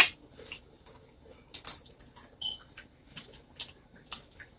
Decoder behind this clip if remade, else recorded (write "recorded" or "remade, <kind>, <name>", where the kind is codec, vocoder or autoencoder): recorded